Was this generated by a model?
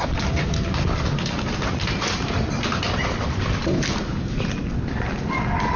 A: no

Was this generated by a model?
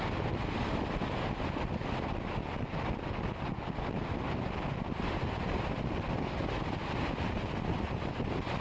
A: no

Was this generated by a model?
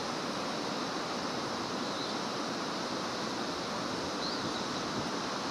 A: no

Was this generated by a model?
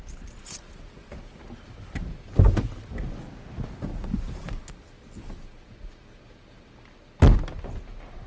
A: no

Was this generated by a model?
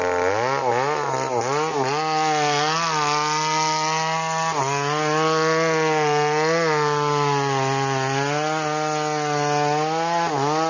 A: no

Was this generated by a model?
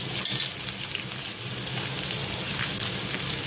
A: no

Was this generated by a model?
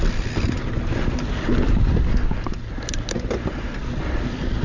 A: no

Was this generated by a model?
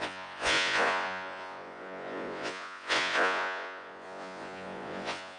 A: yes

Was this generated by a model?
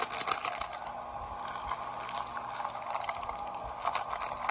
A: no